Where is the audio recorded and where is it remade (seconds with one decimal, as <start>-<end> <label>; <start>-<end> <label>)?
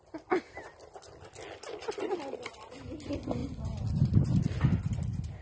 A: 0.0-5.4 recorded